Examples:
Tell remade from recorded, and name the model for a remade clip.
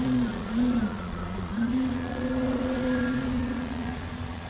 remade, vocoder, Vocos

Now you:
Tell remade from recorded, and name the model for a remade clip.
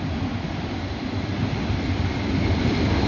recorded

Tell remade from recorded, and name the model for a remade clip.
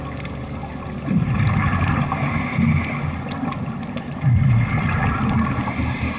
recorded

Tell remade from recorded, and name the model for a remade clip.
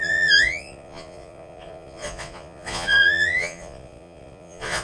remade, vocoder, Vocos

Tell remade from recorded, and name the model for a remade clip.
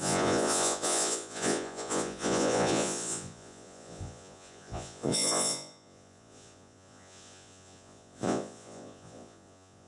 remade, vocoder, Vocos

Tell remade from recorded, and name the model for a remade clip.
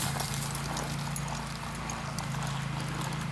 recorded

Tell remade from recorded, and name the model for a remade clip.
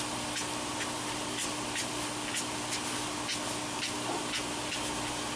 recorded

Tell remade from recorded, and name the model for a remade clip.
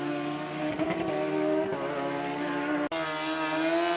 recorded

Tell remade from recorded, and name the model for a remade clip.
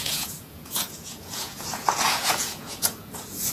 remade, vocoder, Vocos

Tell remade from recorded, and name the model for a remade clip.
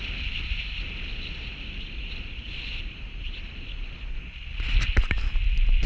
recorded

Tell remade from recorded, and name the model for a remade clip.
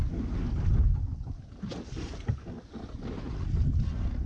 recorded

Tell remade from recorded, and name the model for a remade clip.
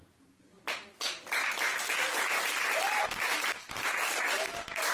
recorded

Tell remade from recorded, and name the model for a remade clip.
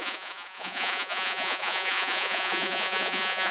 remade, vocoder, Vocos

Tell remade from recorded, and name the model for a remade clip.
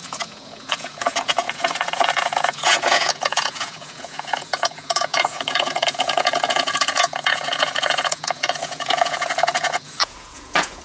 remade, vocoder, Vocos